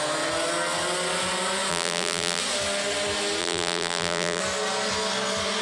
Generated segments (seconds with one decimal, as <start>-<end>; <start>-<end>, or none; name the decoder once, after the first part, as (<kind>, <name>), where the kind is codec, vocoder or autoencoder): 1.7-2.4 (vocoder, BigVGAN v2); 3.4-4.4